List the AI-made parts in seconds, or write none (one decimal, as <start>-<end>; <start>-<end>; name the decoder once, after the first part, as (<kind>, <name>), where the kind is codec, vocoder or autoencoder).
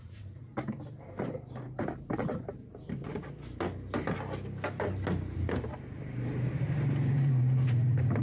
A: 0.0-0.4 (vocoder, BigVGAN v2); 1.6-3.1; 5.5-8.2